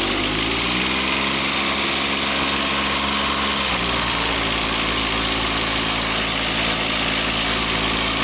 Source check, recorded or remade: recorded